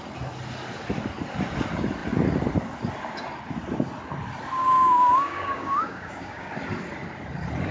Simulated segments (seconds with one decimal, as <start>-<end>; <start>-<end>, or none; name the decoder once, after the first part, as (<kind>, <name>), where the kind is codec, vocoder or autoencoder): 4.6-6.5 (codec, DAC)